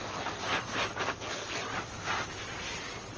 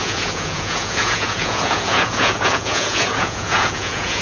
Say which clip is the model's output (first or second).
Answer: second